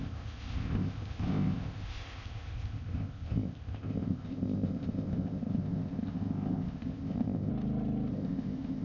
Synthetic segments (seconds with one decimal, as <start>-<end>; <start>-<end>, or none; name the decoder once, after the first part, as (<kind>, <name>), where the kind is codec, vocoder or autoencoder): 0.0-7.5 (codec, ZipCodec); 8.1-8.8